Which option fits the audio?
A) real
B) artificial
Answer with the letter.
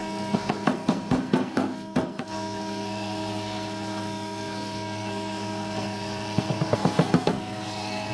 B